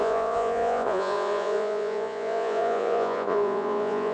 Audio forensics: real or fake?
fake